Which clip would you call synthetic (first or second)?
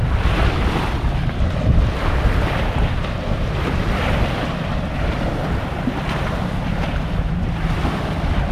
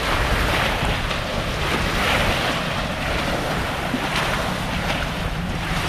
first